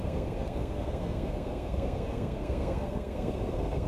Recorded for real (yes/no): no